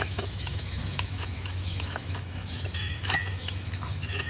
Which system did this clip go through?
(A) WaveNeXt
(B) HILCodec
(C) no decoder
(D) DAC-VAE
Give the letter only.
D